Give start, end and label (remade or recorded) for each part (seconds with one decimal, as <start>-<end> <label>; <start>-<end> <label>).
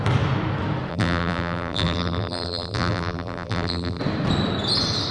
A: 0.0-0.9 recorded; 0.9-4.0 remade; 4.0-5.1 recorded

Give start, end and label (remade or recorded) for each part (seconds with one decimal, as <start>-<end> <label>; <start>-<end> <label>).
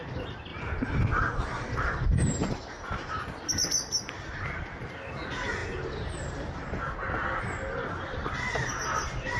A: 0.0-0.5 recorded; 0.5-3.5 remade; 3.5-5.6 recorded; 5.6-6.8 remade; 6.8-9.4 recorded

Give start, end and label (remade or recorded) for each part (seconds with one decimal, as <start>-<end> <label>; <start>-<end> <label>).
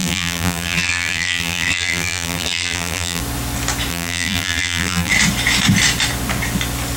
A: 0.0-3.2 remade; 3.2-3.9 recorded; 3.9-5.1 remade; 5.1-7.0 recorded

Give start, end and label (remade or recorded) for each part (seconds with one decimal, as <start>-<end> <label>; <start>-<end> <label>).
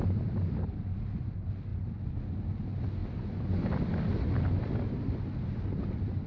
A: 0.0-1.7 recorded; 1.7-2.5 remade; 2.5-6.3 recorded